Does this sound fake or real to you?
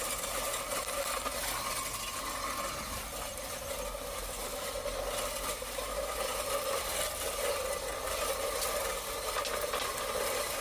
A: real